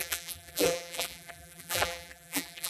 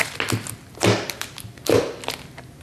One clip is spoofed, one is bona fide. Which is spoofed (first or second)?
first